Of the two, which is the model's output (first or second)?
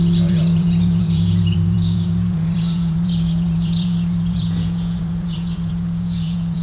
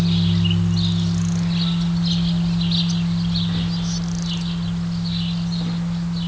first